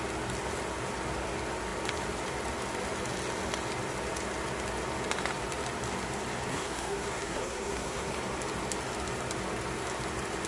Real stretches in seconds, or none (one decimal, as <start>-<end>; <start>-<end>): 0.0-6.5; 8.1-10.5